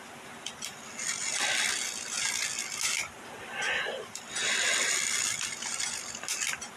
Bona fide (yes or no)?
yes